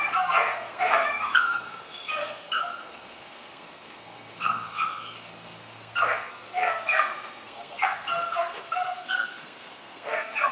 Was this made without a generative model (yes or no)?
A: no